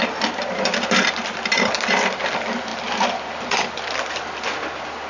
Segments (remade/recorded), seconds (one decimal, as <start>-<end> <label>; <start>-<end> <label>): 0.0-5.1 recorded